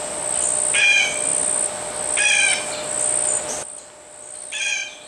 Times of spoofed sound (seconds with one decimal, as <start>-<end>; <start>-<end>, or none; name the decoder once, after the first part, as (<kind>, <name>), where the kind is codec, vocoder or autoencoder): none